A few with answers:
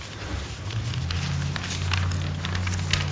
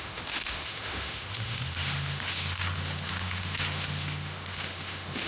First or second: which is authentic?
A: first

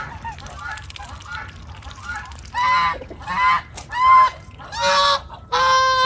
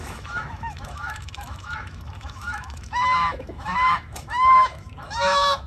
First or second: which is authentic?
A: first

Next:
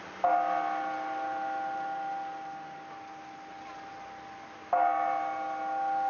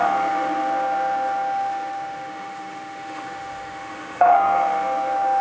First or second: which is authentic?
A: first